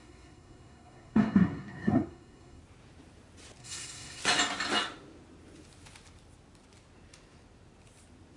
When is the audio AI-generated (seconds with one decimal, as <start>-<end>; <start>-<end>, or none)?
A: 0.0-2.6; 3.6-4.2